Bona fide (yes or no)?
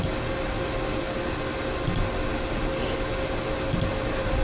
yes